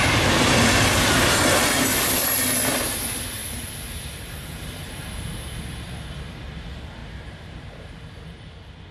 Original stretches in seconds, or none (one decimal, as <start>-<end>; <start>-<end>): 0.0-3.4; 5.1-7.0; 7.9-8.9